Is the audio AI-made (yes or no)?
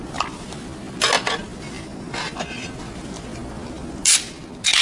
no